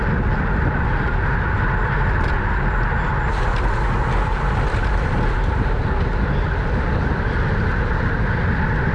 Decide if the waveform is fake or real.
real